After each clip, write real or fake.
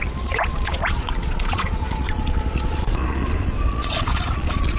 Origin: fake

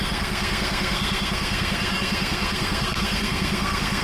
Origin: fake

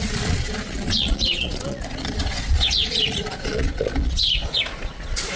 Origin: fake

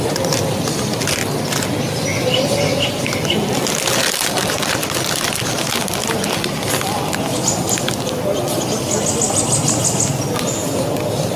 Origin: real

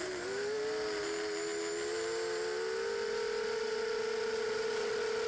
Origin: real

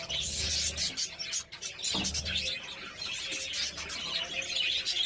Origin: real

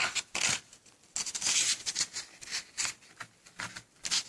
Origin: real